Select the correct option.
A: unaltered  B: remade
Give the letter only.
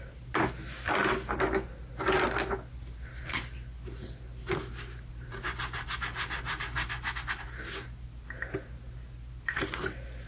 A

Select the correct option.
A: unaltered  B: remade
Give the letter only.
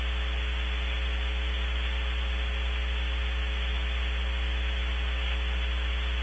A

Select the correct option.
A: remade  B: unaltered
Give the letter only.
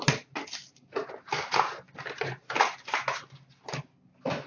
B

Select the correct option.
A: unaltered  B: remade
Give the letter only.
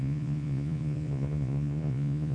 B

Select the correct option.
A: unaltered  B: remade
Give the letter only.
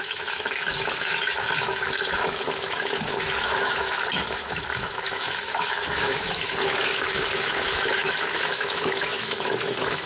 B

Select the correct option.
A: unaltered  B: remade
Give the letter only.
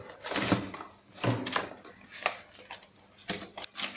A